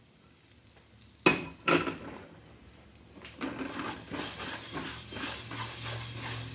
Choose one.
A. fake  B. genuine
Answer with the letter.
B